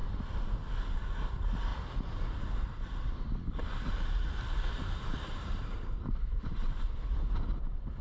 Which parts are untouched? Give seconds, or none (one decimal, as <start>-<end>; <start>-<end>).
0.0-1.0; 1.7-4.7